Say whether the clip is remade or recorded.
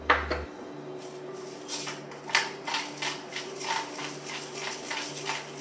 recorded